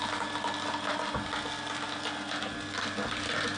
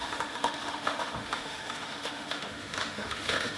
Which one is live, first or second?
first